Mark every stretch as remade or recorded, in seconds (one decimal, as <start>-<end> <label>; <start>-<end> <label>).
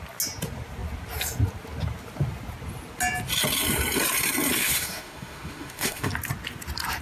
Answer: 0.0-4.6 recorded; 4.6-6.1 remade; 6.1-7.0 recorded